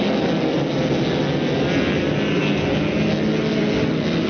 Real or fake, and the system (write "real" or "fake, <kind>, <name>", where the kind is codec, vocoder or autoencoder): real